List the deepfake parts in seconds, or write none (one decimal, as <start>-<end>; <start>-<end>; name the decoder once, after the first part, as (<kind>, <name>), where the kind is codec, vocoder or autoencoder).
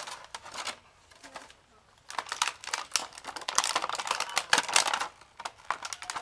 none